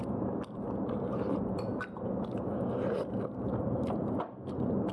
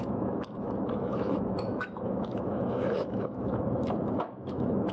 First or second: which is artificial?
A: second